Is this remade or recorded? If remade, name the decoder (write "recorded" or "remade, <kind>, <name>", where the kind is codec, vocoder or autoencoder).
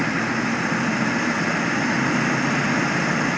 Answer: recorded